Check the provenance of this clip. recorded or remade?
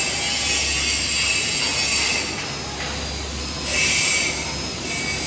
recorded